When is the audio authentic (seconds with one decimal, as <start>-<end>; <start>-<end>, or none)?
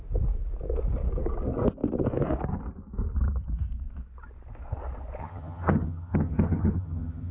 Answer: 0.0-5.2